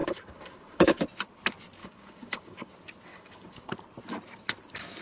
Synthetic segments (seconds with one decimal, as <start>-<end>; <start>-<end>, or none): 0.0-1.0; 1.8-2.7; 3.1-3.7

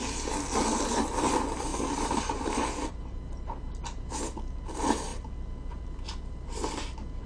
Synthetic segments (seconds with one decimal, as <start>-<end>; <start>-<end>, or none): 1.7-3.0

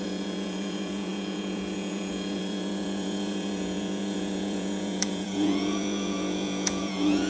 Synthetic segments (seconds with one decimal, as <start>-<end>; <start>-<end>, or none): 0.0-7.3

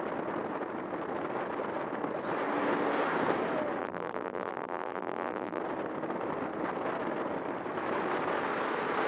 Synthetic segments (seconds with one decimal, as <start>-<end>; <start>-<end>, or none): 3.8-5.6